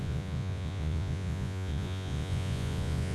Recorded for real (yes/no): no